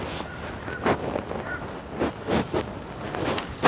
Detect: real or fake real